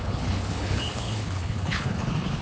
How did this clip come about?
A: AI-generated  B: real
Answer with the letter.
A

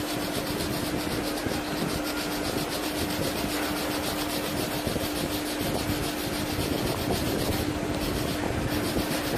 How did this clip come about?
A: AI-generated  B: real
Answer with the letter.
B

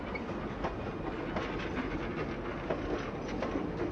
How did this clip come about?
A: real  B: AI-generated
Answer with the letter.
A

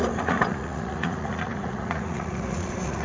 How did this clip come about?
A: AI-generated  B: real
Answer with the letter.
A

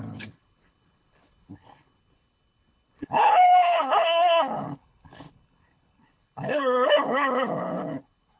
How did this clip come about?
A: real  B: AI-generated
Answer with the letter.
B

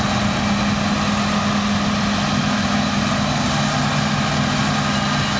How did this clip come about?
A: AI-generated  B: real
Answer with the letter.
B